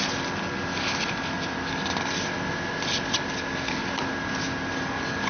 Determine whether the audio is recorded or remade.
recorded